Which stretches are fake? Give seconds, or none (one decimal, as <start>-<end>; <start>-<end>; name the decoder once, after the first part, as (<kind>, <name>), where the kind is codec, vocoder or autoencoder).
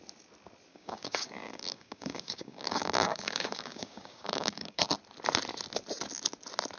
0.7-4.8 (codec, DAC)